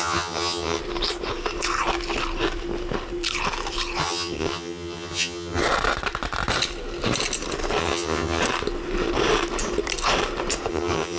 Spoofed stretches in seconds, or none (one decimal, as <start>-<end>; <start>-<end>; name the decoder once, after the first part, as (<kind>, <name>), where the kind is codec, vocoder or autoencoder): 0.0-0.8 (vocoder, HiFi-GAN); 4.0-5.6; 7.8-8.4; 10.7-11.2